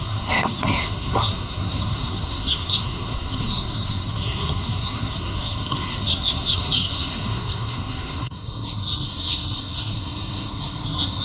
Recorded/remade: remade